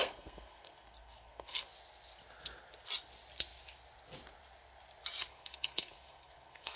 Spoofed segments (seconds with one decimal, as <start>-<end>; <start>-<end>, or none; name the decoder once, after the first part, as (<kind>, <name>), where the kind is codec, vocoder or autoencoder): 0.0-1.7 (codec, SNAC); 5.3-6.8